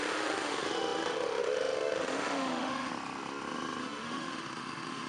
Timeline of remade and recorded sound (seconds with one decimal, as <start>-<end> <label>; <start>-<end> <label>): 0.0-2.9 remade; 2.9-3.8 recorded; 3.8-5.1 remade

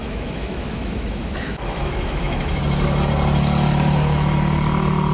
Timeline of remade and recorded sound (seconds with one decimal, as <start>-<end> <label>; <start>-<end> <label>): 0.0-2.6 remade; 2.6-5.1 recorded

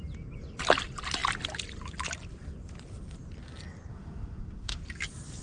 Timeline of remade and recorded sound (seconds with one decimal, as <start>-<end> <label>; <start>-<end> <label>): 0.0-3.9 recorded; 3.9-4.8 remade; 4.8-5.4 recorded

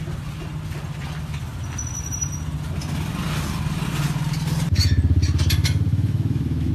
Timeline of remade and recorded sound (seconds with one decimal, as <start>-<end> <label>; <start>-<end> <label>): 0.0-5.9 recorded; 5.9-6.7 remade

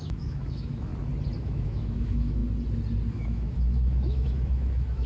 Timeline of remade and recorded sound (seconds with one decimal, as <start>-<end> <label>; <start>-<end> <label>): 0.0-0.9 remade; 0.9-1.4 recorded; 1.4-2.4 remade; 2.4-3.1 recorded; 3.1-5.1 remade

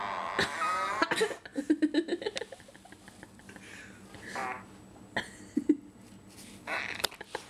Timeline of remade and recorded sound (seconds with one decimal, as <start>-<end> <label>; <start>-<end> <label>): 0.0-7.5 recorded